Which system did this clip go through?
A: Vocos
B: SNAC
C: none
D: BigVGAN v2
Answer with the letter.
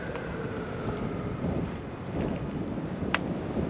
C